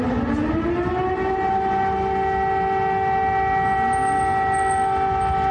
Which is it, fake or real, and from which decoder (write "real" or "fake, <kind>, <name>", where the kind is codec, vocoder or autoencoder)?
real